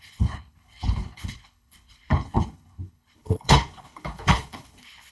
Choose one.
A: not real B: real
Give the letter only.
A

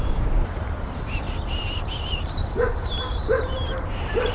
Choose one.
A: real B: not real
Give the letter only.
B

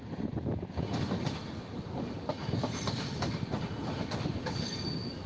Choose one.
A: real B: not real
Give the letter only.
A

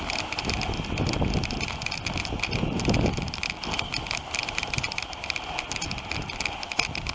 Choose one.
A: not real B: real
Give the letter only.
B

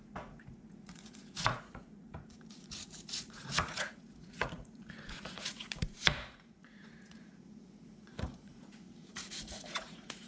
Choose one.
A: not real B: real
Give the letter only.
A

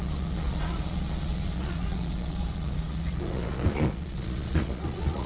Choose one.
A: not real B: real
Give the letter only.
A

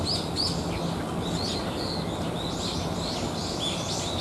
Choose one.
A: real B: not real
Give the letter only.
A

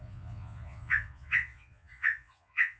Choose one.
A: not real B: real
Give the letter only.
A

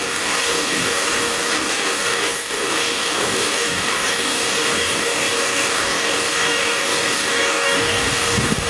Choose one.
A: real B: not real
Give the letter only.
B